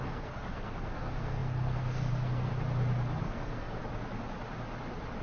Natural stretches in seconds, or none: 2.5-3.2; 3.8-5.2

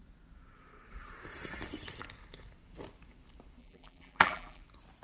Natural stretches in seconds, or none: 0.0-3.6; 4.6-5.0

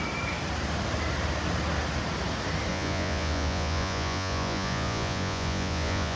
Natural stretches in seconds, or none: 0.0-2.7

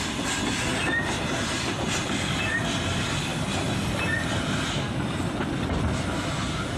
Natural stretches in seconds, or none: 0.0-6.8

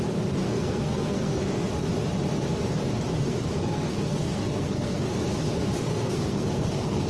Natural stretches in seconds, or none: 0.0-0.4; 1.7-3.2; 5.0-5.9

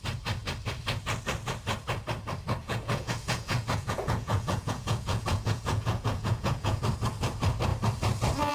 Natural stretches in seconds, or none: 0.0-2.6; 6.8-8.5